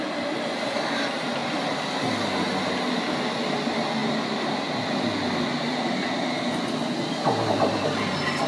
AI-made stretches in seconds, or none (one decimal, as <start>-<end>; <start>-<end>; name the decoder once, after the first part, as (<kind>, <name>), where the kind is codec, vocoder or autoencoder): none